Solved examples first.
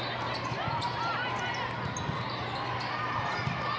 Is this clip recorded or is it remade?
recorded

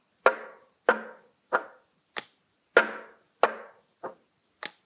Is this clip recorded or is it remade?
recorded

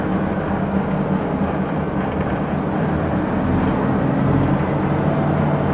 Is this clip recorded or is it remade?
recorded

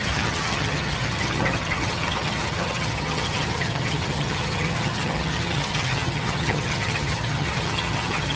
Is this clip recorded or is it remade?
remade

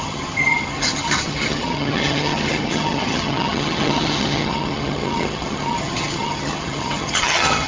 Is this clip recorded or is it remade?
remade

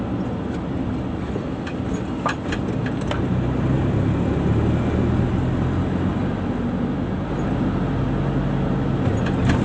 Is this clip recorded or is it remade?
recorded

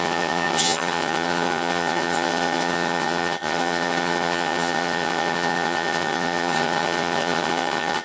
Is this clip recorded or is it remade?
remade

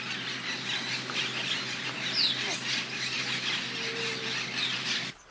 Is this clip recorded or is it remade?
recorded